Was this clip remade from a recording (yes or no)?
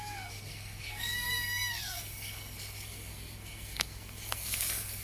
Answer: yes